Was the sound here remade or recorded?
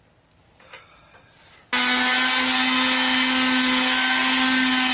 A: recorded